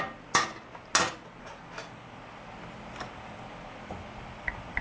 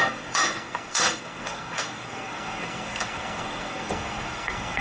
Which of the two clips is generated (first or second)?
second